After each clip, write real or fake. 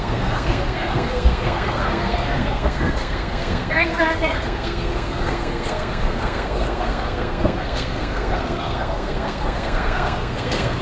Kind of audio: fake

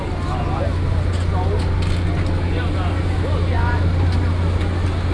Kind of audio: real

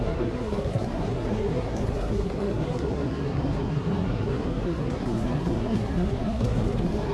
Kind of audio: fake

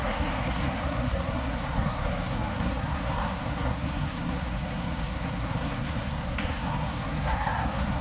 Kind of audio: fake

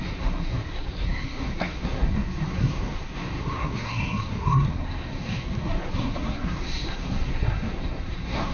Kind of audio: fake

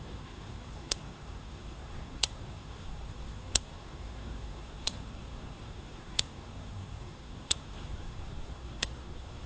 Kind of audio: fake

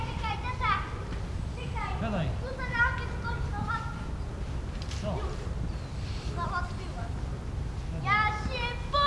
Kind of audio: real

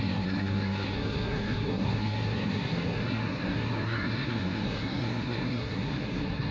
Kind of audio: fake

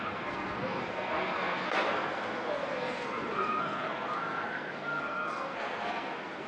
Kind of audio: fake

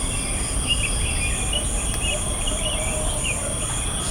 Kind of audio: real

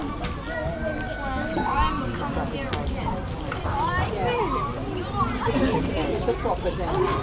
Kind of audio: real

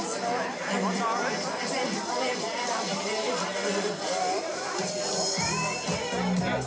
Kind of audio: real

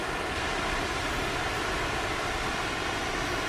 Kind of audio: real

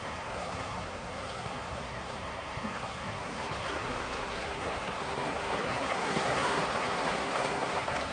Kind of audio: fake